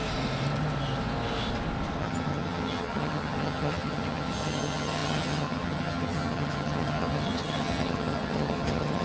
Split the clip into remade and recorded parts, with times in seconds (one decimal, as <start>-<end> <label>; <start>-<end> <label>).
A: 0.0-2.0 recorded; 2.0-9.0 remade